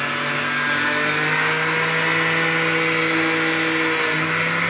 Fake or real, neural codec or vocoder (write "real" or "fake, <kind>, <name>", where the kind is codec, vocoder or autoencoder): real